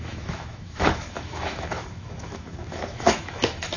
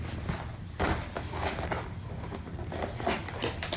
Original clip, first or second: second